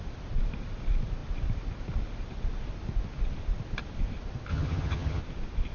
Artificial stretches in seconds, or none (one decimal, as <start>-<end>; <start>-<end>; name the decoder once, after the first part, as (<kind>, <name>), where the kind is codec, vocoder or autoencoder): 4.5-5.2 (vocoder, HiFi-GAN)